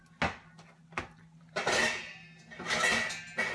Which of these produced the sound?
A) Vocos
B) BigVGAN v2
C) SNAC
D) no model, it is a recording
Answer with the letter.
D